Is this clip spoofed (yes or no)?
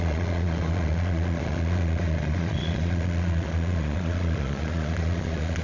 yes